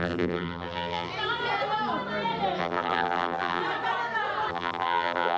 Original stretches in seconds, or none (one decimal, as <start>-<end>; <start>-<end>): 1.1-2.6; 3.6-4.5